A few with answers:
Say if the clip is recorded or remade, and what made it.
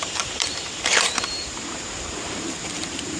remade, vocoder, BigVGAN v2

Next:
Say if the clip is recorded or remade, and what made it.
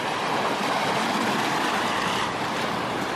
recorded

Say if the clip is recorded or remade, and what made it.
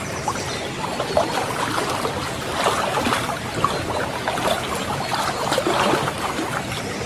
remade, vocoder, BigVGAN v2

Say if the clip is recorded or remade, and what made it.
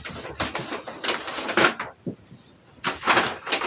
remade, vocoder, BigVGAN v2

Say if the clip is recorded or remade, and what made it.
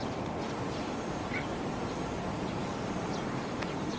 remade, vocoder, BigVGAN v2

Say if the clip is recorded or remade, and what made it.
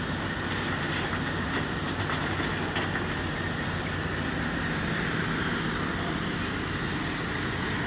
recorded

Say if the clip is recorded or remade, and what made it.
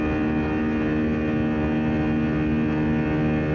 recorded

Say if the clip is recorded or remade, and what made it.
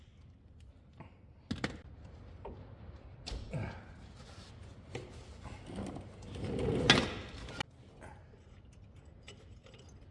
recorded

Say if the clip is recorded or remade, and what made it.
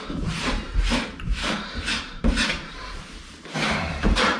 remade, vocoder, BigVGAN v2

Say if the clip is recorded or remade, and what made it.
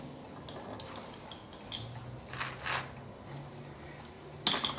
recorded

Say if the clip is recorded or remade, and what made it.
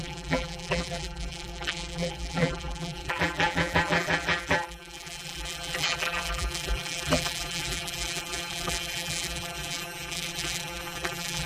remade, vocoder, BigVGAN v2